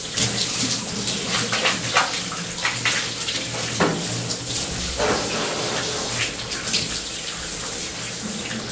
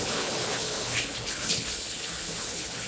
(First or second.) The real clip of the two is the first